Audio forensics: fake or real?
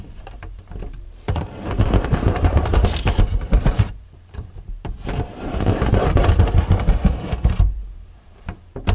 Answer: fake